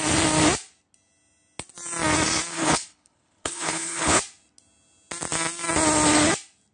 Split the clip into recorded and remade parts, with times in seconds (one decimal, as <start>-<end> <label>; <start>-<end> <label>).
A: 0.0-2.5 recorded; 2.5-4.2 remade; 4.2-6.7 recorded